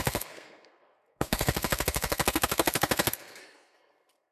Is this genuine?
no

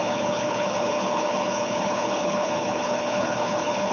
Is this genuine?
no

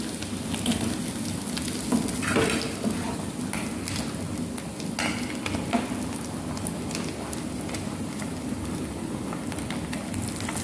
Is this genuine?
yes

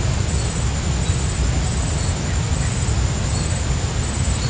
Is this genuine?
yes